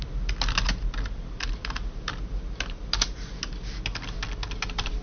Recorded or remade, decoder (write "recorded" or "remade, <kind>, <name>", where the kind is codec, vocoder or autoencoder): recorded